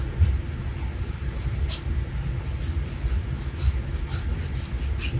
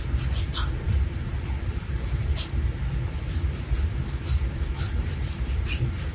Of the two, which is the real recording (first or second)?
first